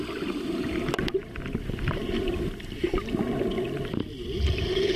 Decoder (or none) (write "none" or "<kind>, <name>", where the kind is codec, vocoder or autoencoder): none